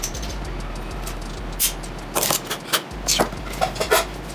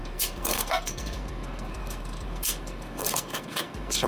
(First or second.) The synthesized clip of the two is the second